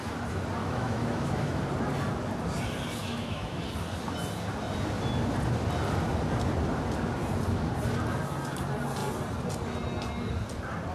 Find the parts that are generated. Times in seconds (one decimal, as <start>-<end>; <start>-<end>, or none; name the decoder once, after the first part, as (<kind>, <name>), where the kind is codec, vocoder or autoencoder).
0.6-1.6 (autoencoder, DAC-VAE); 3.0-3.6